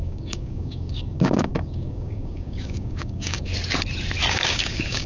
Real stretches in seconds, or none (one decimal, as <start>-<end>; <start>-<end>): 3.5-4.3